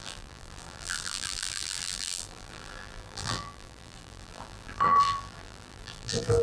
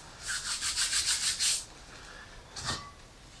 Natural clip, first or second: second